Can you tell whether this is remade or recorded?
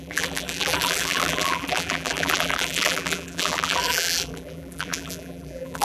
remade